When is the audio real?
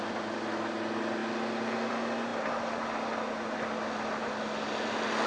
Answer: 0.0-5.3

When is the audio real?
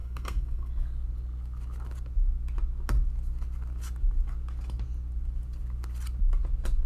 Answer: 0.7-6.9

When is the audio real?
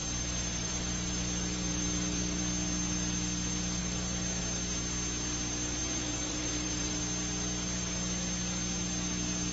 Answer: 2.4-3.8; 4.4-5.8; 7.0-9.5